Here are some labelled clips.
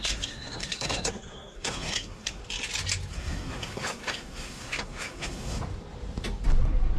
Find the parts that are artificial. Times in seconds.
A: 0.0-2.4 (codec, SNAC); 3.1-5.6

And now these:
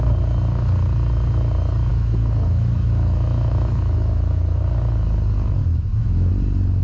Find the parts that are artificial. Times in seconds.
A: 1.9-4.6 (autoencoder, DAC-VAE); 5.6-6.3

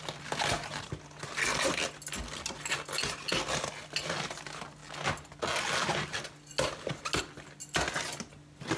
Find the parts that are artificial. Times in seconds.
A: none